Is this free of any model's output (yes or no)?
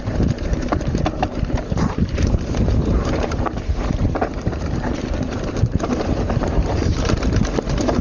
no